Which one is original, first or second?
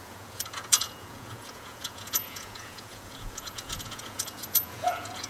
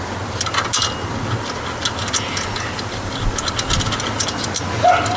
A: second